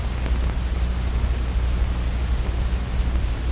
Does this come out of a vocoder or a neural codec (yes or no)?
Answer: no